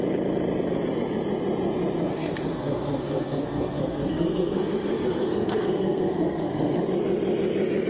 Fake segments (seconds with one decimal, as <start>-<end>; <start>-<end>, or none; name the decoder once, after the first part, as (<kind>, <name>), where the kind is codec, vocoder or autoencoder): 2.1-6.8 (codec, SNAC)